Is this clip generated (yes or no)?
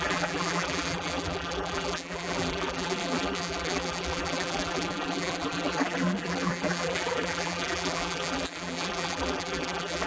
yes